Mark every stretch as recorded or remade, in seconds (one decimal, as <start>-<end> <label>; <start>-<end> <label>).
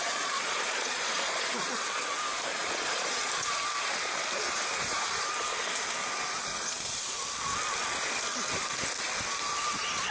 0.0-2.1 remade; 2.1-2.5 recorded; 2.5-3.5 remade; 3.5-6.5 recorded; 6.5-7.2 remade; 7.2-10.1 recorded